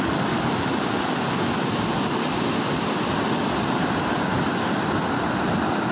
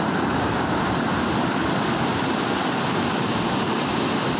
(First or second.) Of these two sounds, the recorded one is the second